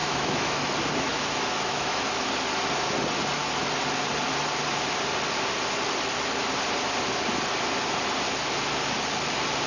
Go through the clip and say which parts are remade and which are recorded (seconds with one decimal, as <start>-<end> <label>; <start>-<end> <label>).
0.0-0.7 remade; 0.7-1.1 recorded; 1.1-2.3 remade; 2.3-9.7 recorded